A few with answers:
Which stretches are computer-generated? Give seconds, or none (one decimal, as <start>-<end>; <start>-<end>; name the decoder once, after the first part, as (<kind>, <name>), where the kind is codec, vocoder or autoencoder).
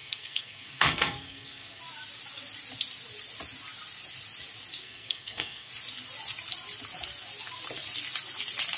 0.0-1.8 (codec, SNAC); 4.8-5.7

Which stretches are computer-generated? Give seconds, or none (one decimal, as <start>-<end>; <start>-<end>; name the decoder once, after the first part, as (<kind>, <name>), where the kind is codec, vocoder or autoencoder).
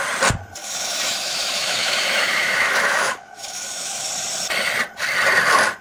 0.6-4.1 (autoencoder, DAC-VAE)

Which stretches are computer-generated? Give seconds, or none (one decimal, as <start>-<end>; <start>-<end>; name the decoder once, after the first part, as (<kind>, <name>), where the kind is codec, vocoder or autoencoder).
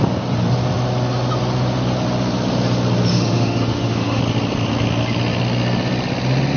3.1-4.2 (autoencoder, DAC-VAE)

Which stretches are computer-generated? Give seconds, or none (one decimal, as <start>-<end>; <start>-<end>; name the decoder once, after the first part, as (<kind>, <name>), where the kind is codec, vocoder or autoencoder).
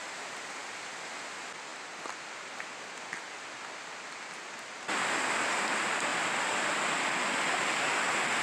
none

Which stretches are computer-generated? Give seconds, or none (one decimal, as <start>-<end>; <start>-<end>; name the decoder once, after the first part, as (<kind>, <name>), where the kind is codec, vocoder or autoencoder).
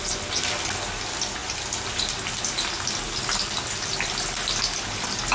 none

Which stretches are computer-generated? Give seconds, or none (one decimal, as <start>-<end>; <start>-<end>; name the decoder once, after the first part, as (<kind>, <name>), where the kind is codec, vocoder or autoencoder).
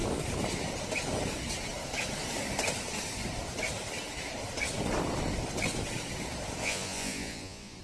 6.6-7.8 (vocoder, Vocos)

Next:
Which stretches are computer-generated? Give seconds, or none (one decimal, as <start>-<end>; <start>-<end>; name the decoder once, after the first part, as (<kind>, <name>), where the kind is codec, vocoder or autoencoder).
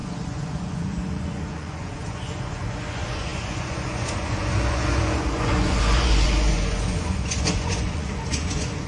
0.0-8.9 (vocoder, Vocos)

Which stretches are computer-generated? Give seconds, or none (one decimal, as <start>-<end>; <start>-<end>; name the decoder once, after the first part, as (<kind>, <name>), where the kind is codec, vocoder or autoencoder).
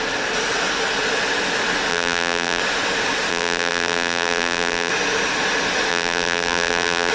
1.9-2.6 (vocoder, BigVGAN v2); 3.3-4.9; 5.9-7.1